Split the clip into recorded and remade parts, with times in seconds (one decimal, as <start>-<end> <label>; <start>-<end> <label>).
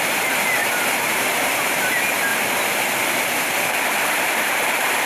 0.0-0.6 recorded; 0.6-1.9 remade; 1.9-2.3 recorded; 2.3-3.0 remade; 3.0-5.1 recorded